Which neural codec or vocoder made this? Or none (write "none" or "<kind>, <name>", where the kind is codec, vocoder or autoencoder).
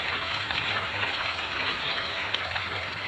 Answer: codec, SNAC